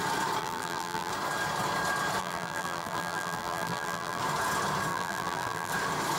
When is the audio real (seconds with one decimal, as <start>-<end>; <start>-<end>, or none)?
0.0-0.4; 1.1-2.2; 4.2-4.9; 5.7-6.2